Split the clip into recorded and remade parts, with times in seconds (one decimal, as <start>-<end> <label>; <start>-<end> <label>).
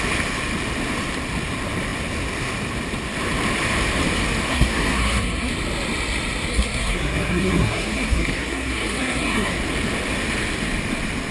0.0-4.5 recorded; 4.5-5.5 remade; 5.5-6.5 recorded; 6.5-9.6 remade; 9.6-11.3 recorded